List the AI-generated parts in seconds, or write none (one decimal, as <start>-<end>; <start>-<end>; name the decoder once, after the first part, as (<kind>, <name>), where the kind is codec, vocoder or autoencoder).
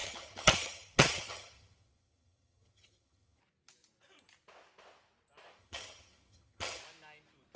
0.0-3.4 (vocoder, HiFi-GAN); 5.6-6.8